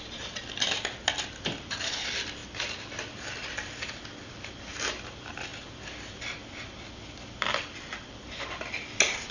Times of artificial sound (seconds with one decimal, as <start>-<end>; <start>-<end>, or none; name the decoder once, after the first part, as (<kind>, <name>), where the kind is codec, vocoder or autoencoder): none